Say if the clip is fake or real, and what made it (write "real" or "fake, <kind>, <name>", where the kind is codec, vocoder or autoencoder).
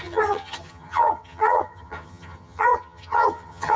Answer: fake, vocoder, HiFi-GAN